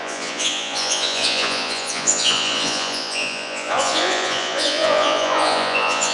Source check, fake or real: fake